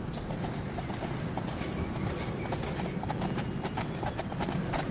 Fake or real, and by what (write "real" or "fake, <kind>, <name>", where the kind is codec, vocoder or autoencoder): real